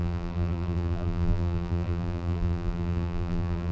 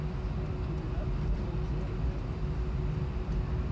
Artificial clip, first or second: first